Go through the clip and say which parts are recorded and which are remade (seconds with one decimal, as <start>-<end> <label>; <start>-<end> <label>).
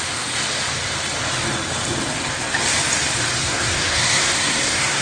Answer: 0.0-3.4 recorded; 3.4-5.0 remade